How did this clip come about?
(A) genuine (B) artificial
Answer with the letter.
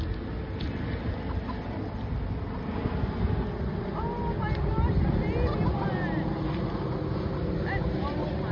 A